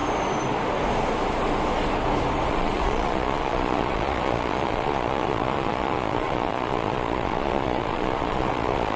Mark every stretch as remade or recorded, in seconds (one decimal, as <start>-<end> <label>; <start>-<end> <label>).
0.0-2.5 recorded; 2.5-9.0 remade